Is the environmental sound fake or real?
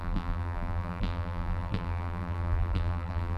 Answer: fake